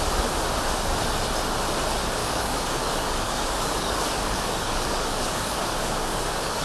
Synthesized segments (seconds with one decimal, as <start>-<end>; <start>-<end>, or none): 2.2-6.6